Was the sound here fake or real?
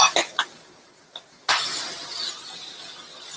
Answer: real